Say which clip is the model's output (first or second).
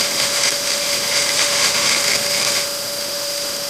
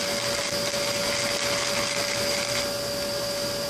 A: first